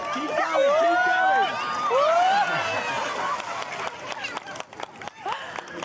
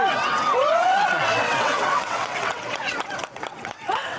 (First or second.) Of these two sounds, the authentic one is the first